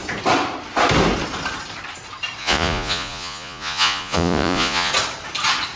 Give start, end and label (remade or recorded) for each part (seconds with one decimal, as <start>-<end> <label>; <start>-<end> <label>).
0.0-2.4 recorded; 2.4-4.9 remade; 4.9-5.8 recorded